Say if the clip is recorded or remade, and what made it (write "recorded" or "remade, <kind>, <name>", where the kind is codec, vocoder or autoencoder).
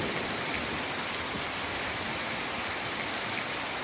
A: recorded